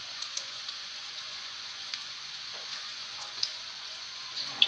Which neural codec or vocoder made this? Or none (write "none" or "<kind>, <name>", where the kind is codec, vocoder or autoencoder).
vocoder, Vocos